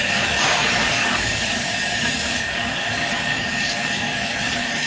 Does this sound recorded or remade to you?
remade